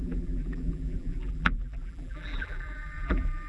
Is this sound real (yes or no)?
no